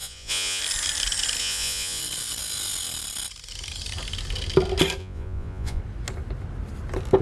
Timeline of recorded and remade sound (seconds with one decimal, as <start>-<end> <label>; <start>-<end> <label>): 0.0-0.6 remade; 0.6-1.4 recorded; 1.4-2.0 remade; 2.0-5.0 recorded; 5.0-5.8 remade; 5.8-7.2 recorded

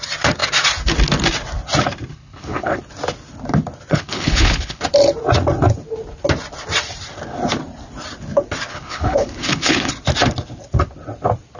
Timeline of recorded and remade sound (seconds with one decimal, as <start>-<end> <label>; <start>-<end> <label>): 0.0-2.1 recorded; 2.1-2.8 remade; 2.8-3.9 recorded; 3.9-4.8 remade; 4.8-8.7 recorded; 8.7-9.9 remade; 9.9-11.6 recorded

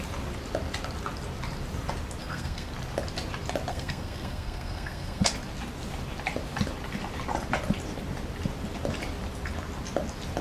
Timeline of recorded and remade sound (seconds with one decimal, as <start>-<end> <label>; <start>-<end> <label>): 0.0-2.2 recorded; 2.2-2.7 remade; 2.7-3.7 recorded; 3.7-5.3 remade; 5.3-10.4 recorded

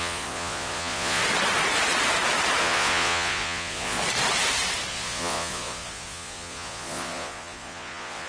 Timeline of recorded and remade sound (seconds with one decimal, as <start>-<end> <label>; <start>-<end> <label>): 0.0-1.2 remade; 1.2-2.6 recorded; 2.6-4.0 remade; 4.0-4.9 recorded; 4.9-8.3 remade